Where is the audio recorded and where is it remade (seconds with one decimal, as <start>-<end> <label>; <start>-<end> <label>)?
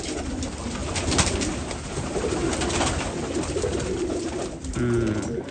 0.0-5.5 recorded